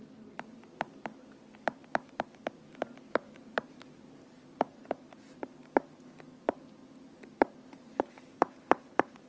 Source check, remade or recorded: recorded